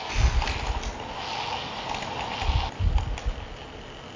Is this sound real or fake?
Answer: real